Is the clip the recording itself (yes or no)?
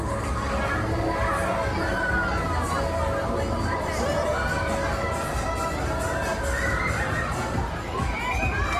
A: yes